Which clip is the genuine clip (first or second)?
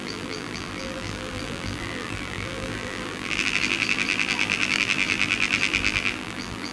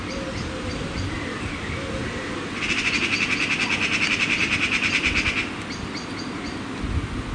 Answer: second